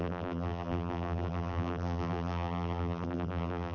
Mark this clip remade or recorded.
remade